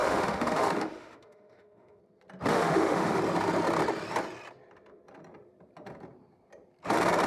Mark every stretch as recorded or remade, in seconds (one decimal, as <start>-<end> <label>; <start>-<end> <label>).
0.0-2.0 remade; 2.0-2.5 recorded; 2.5-3.2 remade; 3.2-7.3 recorded

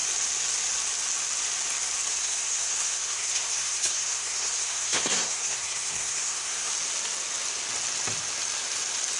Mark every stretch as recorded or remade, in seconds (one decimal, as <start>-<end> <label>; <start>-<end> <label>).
0.0-2.1 recorded; 2.1-6.7 remade; 6.7-9.2 recorded

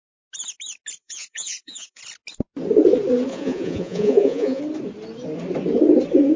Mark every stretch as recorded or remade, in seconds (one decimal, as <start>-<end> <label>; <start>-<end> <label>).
0.0-1.0 recorded; 1.0-2.0 remade; 2.0-3.3 recorded; 3.3-4.6 remade; 4.6-6.4 recorded

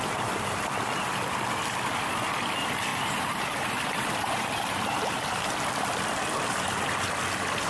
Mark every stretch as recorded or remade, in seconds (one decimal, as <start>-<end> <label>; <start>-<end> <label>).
0.0-2.9 recorded; 2.9-5.1 remade; 5.1-7.7 recorded

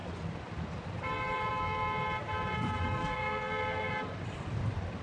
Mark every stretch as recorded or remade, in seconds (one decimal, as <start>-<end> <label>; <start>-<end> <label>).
0.0-2.8 recorded; 2.8-3.9 remade; 3.9-5.0 recorded

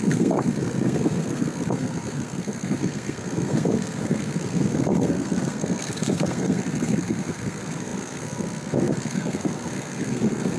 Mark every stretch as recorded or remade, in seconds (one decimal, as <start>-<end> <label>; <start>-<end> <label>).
0.0-10.6 remade

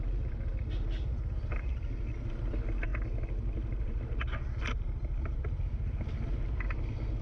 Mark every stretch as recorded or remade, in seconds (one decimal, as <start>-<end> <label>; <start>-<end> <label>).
0.0-7.2 recorded